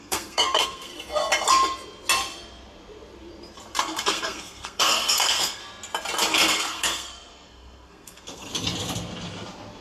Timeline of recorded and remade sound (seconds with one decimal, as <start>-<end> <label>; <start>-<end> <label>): 0.0-0.9 remade; 0.9-3.8 recorded; 3.8-5.6 remade; 5.6-6.3 recorded; 6.3-8.5 remade; 8.5-9.8 recorded

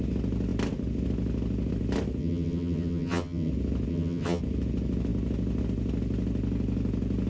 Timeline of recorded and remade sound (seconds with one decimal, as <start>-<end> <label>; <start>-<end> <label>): 0.0-2.2 recorded; 2.2-3.5 remade; 3.5-3.9 recorded; 3.9-4.4 remade; 4.4-7.3 recorded

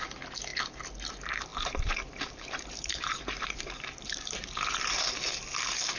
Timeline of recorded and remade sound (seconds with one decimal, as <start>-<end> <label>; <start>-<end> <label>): 0.0-1.5 recorded; 1.5-5.1 remade; 5.1-6.0 recorded

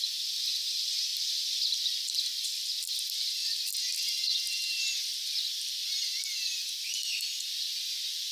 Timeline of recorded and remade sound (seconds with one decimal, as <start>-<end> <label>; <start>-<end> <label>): 0.0-8.3 recorded

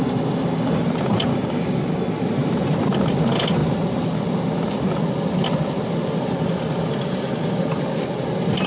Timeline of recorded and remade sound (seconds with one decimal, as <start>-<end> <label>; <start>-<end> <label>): 0.0-0.8 remade; 0.8-1.3 recorded; 1.3-2.1 remade; 2.1-8.7 recorded